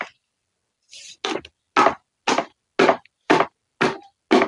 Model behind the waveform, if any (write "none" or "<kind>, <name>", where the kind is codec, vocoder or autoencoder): none